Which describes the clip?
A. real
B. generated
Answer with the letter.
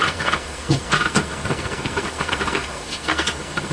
B